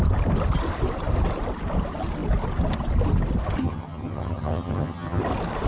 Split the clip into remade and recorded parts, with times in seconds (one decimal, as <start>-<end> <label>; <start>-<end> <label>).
0.0-3.6 recorded; 3.6-5.2 remade; 5.2-5.7 recorded